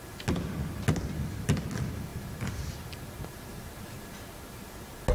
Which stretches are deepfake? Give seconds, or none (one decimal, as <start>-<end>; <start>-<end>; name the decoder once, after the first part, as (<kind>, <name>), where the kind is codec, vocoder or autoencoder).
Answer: 2.1-3.4 (vocoder, BigVGAN v2)